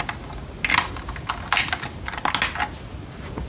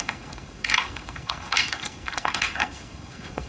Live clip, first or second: first